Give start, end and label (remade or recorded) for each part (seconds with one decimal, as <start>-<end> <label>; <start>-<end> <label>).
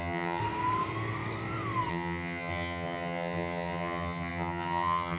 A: 0.0-0.4 remade; 0.4-1.9 recorded; 1.9-5.2 remade